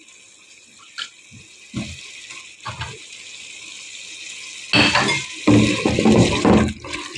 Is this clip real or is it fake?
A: real